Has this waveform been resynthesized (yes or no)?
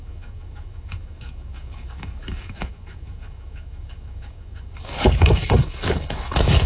yes